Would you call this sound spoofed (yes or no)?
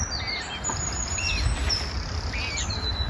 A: no